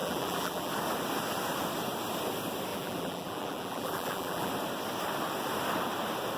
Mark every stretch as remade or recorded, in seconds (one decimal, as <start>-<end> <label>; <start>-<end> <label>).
0.0-0.7 remade; 0.7-2.7 recorded; 2.7-4.5 remade; 4.5-6.4 recorded

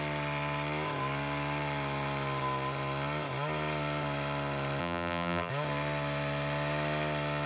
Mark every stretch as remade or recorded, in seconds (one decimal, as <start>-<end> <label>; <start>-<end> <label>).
0.0-4.8 recorded; 4.8-5.5 remade; 5.5-7.5 recorded

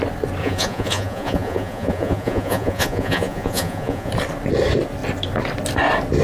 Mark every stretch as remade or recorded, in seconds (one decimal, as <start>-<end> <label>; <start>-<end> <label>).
0.0-0.4 recorded; 0.4-4.1 remade; 4.1-6.2 recorded

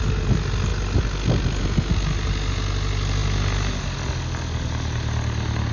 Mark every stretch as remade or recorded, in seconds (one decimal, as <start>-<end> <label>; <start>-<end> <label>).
0.0-5.7 recorded

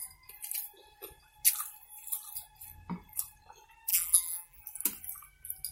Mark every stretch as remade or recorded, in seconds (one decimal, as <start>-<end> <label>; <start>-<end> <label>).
0.0-3.9 recorded; 3.9-4.6 remade; 4.6-5.7 recorded